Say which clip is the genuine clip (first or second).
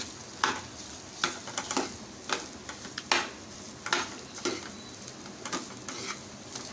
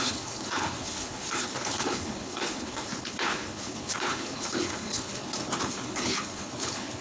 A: first